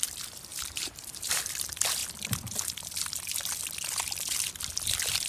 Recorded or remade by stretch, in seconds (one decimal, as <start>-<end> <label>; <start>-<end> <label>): 0.0-0.5 recorded; 0.5-1.5 remade; 1.5-5.3 recorded